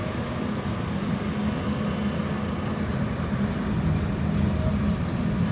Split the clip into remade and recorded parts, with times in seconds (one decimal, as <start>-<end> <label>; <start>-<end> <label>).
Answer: 0.0-5.5 recorded